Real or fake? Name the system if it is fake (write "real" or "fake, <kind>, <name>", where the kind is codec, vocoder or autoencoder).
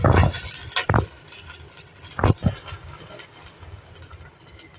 real